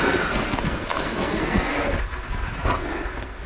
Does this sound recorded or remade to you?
remade